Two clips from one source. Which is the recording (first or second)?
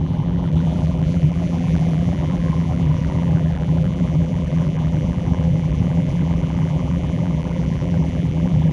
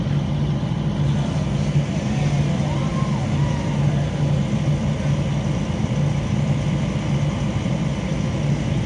second